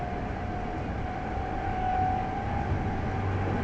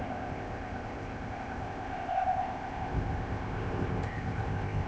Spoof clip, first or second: second